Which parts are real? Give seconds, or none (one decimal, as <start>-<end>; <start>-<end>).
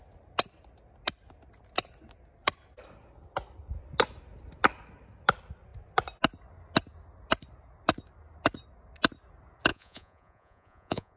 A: 0.0-9.7